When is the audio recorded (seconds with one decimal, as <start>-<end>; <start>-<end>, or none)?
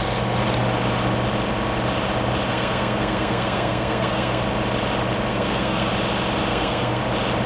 0.0-2.5; 4.4-5.3; 5.9-6.5; 7.0-7.5